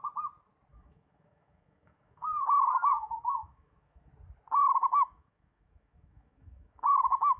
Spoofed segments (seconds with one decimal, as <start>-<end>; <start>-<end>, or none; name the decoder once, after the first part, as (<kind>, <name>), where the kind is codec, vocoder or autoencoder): 0.7-4.1 (autoencoder, DAC-VAE); 4.6-7.4

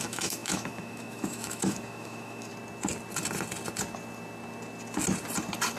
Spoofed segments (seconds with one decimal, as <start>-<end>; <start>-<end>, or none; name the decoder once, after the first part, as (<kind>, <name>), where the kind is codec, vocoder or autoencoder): 0.0-2.5 (autoencoder, DAC-VAE)

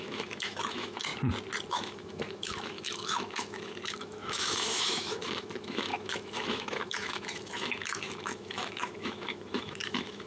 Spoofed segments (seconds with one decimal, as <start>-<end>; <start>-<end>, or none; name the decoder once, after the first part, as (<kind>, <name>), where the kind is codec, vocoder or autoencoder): 0.0-1.1 (autoencoder, DAC-VAE); 1.7-10.3